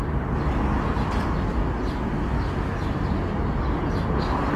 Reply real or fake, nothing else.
real